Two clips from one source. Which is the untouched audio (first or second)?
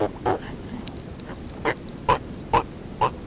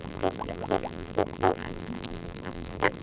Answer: first